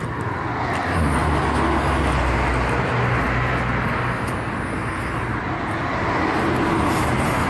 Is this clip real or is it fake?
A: real